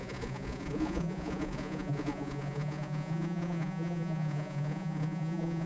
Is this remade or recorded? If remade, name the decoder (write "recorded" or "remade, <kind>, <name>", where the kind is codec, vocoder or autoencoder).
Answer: remade, vocoder, Vocos